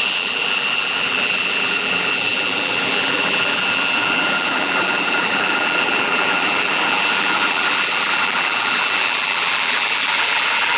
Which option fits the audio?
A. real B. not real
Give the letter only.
B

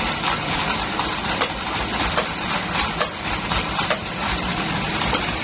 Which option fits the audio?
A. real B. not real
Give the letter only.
B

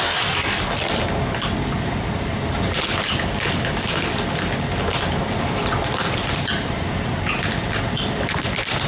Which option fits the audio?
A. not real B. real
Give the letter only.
A